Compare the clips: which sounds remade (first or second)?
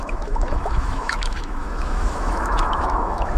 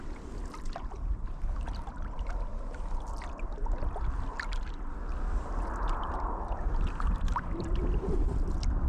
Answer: first